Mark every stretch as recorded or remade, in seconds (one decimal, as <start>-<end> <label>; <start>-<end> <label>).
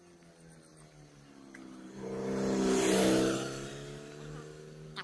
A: 0.0-5.0 recorded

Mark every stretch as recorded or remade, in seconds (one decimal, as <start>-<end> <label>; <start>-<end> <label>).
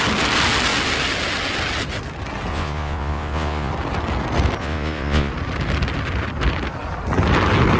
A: 0.0-2.5 recorded; 2.5-3.7 remade; 3.7-4.6 recorded; 4.6-5.3 remade; 5.3-7.8 recorded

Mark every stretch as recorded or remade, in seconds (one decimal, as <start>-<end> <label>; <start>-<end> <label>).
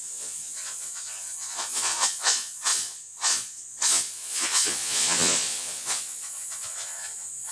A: 0.0-7.5 remade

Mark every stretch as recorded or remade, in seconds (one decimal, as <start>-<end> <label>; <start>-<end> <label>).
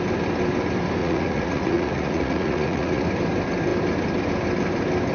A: 0.0-1.0 recorded; 1.0-3.0 remade; 3.0-5.1 recorded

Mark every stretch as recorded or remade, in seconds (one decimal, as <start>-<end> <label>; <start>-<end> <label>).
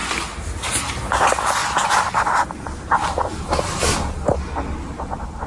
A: 0.0-5.5 recorded